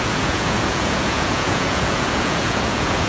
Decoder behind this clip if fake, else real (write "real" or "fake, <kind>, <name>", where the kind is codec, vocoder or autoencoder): fake, vocoder, Vocos